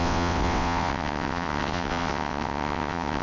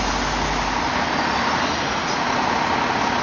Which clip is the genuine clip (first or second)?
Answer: second